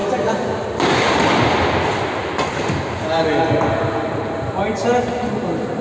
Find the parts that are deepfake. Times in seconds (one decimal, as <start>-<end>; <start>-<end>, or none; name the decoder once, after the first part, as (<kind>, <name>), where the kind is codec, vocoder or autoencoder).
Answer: none